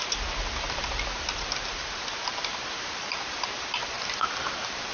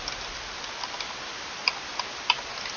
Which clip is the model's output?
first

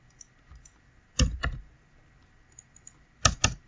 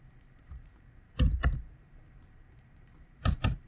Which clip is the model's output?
second